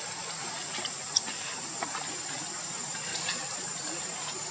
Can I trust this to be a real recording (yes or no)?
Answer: yes